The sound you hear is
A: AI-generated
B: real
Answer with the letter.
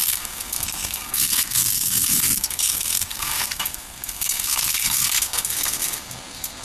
A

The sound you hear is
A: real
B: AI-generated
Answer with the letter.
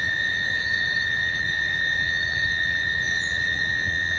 B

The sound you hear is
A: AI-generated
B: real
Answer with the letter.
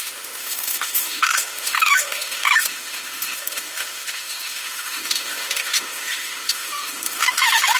A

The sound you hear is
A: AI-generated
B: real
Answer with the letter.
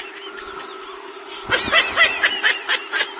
B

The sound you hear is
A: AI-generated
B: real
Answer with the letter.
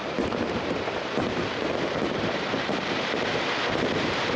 A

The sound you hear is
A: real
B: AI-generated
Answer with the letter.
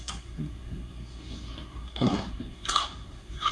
B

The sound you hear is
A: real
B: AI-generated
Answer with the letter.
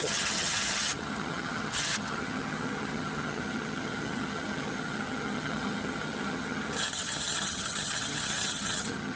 B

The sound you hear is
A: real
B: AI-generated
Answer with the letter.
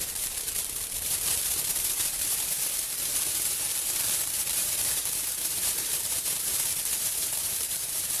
B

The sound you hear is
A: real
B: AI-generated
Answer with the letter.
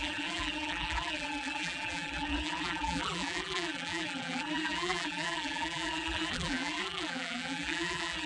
B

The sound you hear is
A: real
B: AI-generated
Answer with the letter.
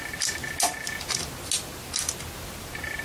A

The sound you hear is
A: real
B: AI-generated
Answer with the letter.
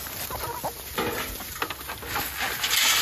A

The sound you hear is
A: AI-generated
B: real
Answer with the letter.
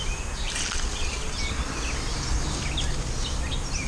B